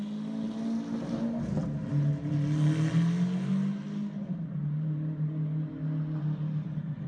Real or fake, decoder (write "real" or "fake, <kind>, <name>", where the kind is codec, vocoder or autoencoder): real